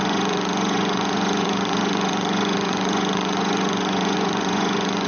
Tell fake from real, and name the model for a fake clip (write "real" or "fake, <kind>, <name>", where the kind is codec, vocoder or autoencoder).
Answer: fake, vocoder, Vocos